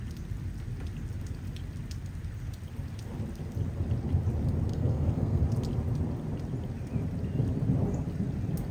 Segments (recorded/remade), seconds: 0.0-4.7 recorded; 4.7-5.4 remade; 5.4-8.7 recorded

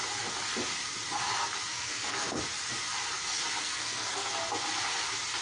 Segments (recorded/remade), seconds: 0.0-1.7 recorded; 1.7-2.4 remade; 2.4-3.6 recorded; 3.6-4.3 remade; 4.3-5.4 recorded

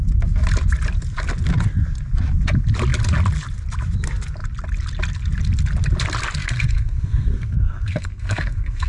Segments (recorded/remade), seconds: 0.0-6.4 recorded; 6.4-8.9 remade

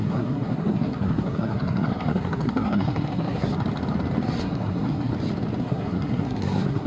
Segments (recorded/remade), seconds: 0.0-3.5 remade; 3.5-4.4 recorded; 4.4-5.1 remade; 5.1-5.6 recorded; 5.6-6.9 remade

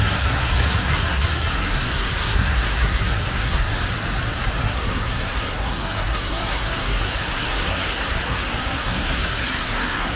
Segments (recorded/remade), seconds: 0.0-3.7 remade; 3.7-4.6 recorded; 4.6-10.2 remade

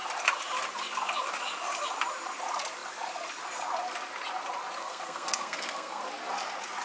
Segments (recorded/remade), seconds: 0.0-4.8 recorded; 4.8-6.0 remade; 6.0-6.8 recorded

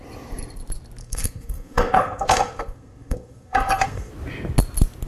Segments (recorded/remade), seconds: 0.0-1.0 recorded; 1.0-4.1 remade; 4.1-5.1 recorded

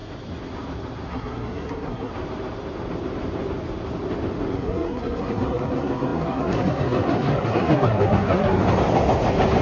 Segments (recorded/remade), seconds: 0.0-1.1 recorded; 1.1-2.1 remade; 2.1-4.5 recorded; 4.5-8.6 remade; 8.6-9.6 recorded